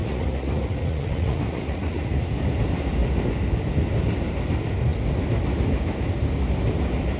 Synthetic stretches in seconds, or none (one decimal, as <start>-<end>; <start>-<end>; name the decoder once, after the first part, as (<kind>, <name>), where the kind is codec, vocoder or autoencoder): 0.0-2.2 (vocoder, Vocos)